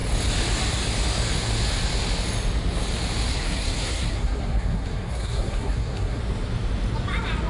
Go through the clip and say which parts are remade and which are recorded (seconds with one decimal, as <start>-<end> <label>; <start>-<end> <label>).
0.0-3.3 recorded; 3.3-6.2 remade; 6.2-7.5 recorded